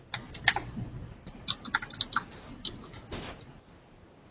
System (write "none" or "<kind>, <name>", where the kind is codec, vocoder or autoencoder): none